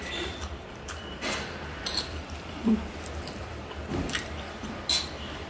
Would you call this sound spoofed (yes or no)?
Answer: yes